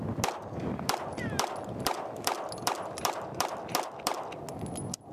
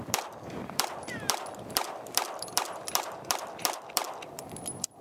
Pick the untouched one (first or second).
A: first